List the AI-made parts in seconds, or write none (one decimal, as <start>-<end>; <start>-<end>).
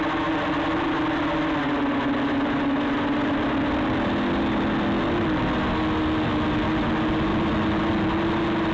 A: 7.3-7.9